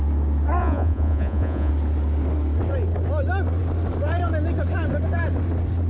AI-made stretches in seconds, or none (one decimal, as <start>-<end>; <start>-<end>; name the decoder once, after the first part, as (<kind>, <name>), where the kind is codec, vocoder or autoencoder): 0.6-1.7 (vocoder, Vocos)